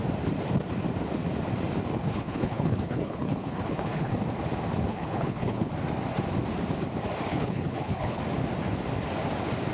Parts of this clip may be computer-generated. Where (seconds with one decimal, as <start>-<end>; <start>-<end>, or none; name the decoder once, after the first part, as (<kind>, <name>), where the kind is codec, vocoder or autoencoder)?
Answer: 2.0-4.1 (codec, HILCodec); 4.9-5.7; 7.3-8.2